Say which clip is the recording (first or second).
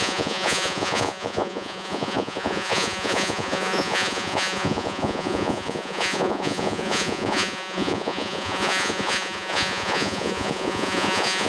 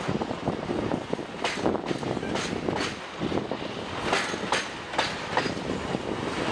second